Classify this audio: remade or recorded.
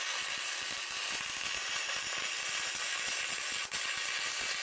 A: recorded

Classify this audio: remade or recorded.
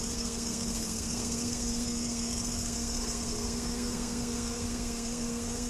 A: remade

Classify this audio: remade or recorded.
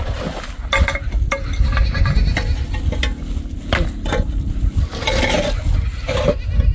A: recorded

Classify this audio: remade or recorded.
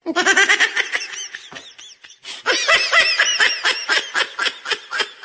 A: recorded